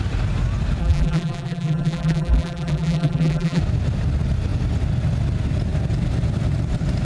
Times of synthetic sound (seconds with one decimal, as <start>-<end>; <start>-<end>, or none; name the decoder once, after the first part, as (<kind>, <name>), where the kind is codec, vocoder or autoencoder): 0.8-3.6 (vocoder, BigVGAN v2)